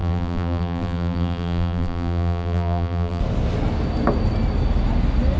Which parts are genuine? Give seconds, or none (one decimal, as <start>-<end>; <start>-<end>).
3.2-5.4